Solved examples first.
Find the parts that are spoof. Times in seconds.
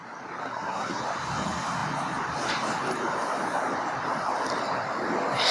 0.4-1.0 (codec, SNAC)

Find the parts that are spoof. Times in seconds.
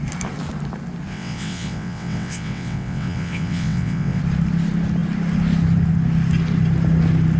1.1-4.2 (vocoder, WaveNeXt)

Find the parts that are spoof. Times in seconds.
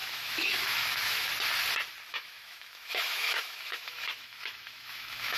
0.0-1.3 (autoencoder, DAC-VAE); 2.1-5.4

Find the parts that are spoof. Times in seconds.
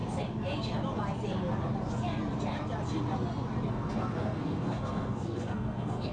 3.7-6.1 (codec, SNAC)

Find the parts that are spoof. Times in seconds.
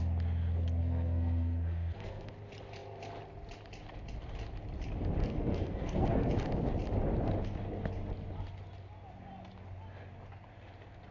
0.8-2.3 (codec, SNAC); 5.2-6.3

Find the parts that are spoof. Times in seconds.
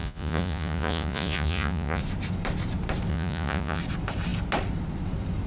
0.0-2.0 (vocoder, Vocos); 3.1-3.8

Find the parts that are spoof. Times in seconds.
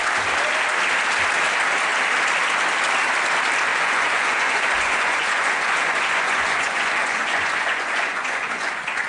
3.7-9.1 (vocoder, Vocos)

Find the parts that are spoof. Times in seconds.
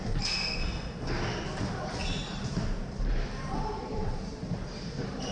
2.0-5.3 (vocoder, BigVGAN v2)